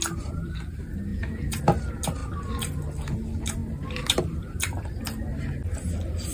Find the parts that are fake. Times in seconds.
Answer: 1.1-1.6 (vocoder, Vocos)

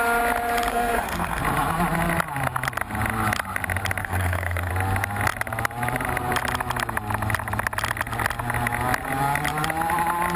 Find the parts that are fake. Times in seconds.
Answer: 0.7-1.4 (codec, SNAC); 4.0-4.7